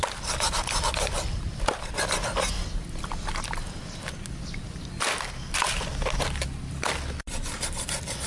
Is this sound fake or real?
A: real